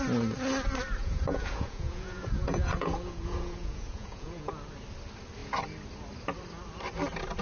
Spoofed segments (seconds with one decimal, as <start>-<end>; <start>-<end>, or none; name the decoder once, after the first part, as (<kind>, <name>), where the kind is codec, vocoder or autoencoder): 1.0-4.5 (vocoder, Vocos)